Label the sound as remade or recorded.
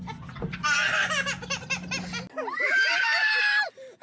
recorded